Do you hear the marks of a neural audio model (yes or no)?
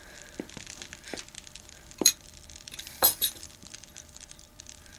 yes